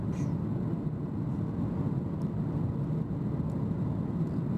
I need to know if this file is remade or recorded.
recorded